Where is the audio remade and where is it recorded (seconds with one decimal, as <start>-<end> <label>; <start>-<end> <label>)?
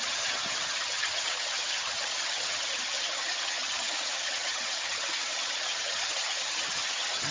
0.0-7.3 remade